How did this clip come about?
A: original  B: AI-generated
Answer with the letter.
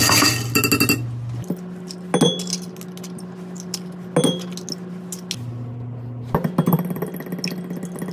A